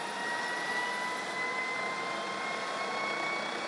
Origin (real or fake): real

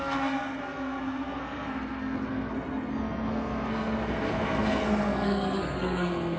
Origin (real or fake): fake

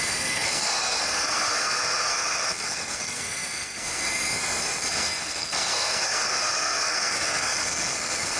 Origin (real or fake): fake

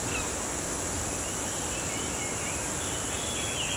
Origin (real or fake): real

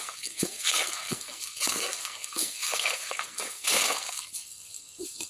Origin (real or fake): fake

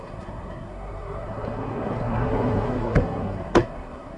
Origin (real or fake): fake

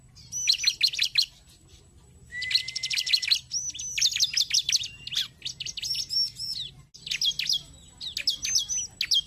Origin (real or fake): real